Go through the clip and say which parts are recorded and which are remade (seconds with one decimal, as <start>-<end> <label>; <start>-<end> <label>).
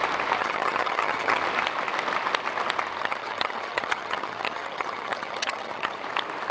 0.0-0.4 recorded; 0.4-1.4 remade; 1.4-3.0 recorded; 3.0-6.0 remade; 6.0-6.5 recorded